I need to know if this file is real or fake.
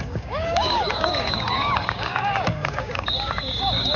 fake